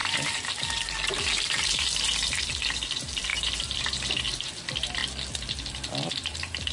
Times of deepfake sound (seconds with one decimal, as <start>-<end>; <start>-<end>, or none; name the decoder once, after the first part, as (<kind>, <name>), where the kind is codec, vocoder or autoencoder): 0.0-5.0 (vocoder, BigVGAN v2); 5.9-6.7